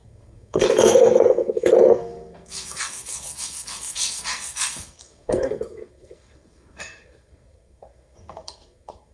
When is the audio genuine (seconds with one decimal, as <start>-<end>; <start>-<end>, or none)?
none